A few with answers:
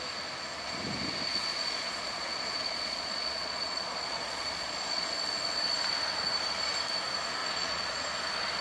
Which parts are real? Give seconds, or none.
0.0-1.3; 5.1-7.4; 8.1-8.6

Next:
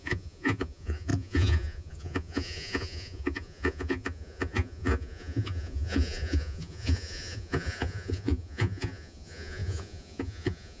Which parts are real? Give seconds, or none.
none

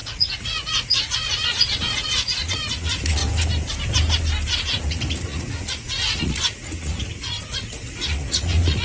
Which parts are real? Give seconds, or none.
3.2-4.5

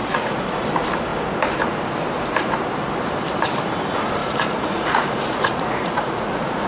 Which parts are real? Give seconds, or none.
0.6-4.2

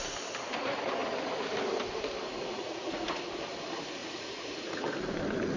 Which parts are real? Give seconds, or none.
0.0-2.3; 3.2-4.0; 4.9-5.6

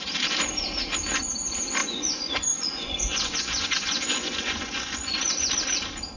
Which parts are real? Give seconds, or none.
0.0-1.8; 5.5-6.2

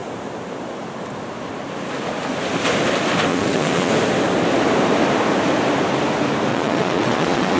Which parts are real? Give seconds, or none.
0.0-3.3; 3.9-6.5

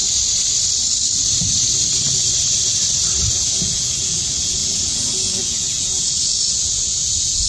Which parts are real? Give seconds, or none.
0.0-3.3